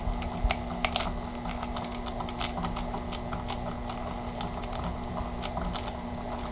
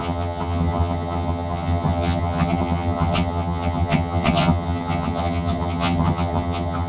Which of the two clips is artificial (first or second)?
second